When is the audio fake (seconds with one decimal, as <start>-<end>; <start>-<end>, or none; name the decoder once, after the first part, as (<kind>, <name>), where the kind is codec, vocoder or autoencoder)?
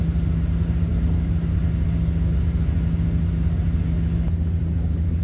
none